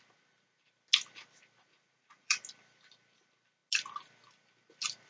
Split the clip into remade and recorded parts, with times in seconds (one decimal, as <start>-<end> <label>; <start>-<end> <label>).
0.0-1.7 recorded; 1.7-2.4 remade; 2.4-5.1 recorded